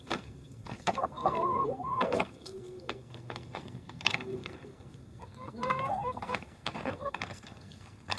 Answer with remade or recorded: remade